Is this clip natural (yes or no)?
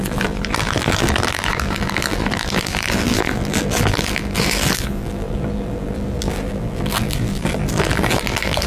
no